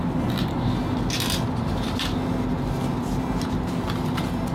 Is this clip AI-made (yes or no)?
no